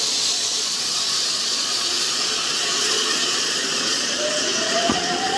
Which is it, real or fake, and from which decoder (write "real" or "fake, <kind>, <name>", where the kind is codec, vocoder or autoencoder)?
fake, vocoder, Vocos